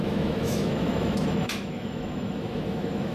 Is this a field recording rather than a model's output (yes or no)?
no